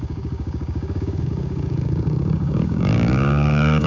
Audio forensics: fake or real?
fake